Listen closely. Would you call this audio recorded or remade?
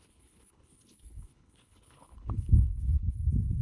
remade